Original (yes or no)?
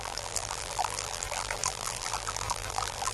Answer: no